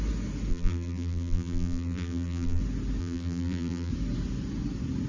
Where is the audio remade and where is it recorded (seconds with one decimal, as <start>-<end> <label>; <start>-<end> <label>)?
0.0-0.5 recorded; 0.5-2.6 remade; 2.6-3.0 recorded; 3.0-3.9 remade; 3.9-5.1 recorded